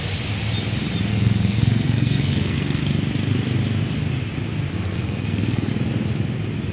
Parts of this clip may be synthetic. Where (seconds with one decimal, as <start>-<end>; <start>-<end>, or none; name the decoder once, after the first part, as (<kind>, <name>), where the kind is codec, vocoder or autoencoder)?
1.1-2.8 (codec, SNAC); 4.7-5.7